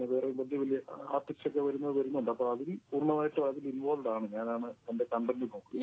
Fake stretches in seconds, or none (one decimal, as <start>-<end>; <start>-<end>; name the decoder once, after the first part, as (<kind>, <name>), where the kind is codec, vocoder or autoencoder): none